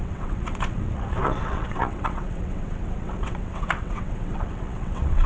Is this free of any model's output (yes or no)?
no